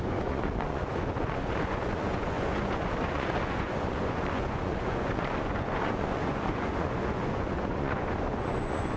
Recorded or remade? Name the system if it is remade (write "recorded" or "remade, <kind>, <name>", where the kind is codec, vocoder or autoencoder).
remade, vocoder, Vocos